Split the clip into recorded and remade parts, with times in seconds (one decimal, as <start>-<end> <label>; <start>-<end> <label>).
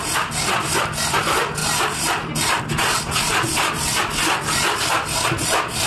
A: 0.0-1.6 recorded; 1.6-2.6 remade; 2.6-5.9 recorded